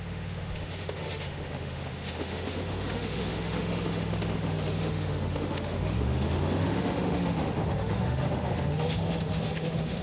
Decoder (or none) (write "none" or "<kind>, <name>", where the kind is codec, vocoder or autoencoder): autoencoder, DAC-VAE